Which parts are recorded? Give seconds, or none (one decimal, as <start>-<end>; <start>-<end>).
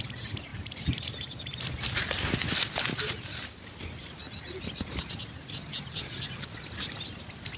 0.0-0.5; 1.6-2.9; 3.6-7.6